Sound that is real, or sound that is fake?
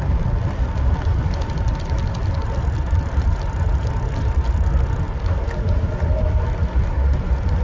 real